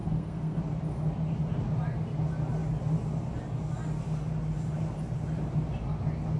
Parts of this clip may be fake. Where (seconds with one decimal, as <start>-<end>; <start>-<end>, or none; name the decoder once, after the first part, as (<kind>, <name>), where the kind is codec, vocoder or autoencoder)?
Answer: 0.0-0.6 (codec, SNAC)